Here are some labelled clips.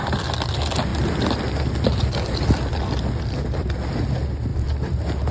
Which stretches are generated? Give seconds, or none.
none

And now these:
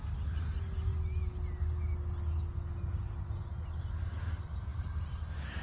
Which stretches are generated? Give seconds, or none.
none

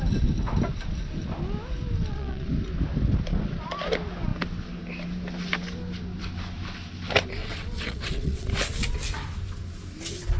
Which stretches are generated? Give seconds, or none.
2.0-2.5 (vocoder, WaveNeXt); 7.4-8.5

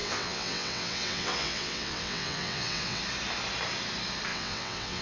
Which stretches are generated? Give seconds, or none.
0.0-3.0 (vocoder, WaveNeXt); 4.3-5.0

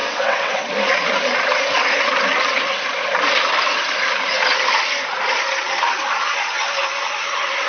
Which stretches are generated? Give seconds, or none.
0.0-0.7 (vocoder, WaveNeXt)